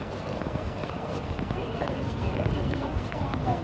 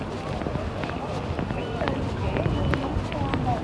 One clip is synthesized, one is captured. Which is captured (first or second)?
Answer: second